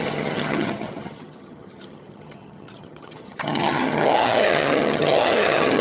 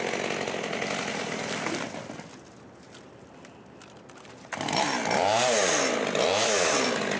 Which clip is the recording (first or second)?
second